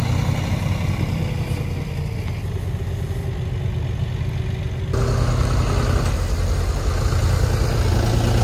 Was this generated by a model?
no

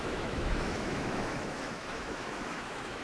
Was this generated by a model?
yes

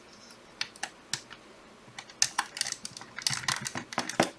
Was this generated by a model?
no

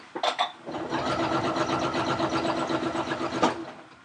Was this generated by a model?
no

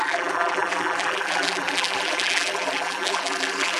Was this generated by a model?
yes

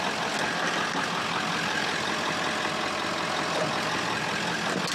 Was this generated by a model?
no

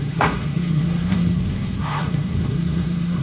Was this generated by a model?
yes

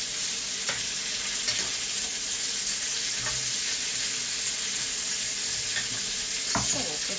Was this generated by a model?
no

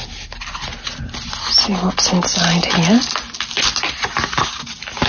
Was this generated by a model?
no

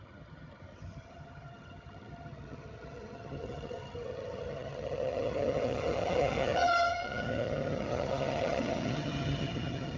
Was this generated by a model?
yes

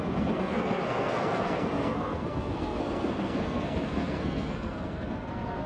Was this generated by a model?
yes